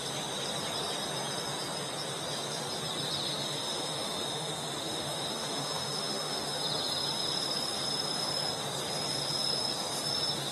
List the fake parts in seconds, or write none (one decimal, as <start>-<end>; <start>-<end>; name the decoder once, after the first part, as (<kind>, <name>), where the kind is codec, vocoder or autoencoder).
3.4-6.6 (autoencoder, DAC-VAE)